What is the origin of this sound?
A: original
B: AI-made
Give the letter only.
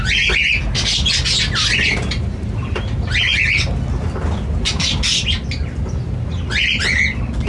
A